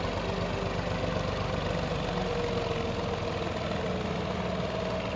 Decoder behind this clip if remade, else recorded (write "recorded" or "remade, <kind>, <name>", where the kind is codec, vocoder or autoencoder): recorded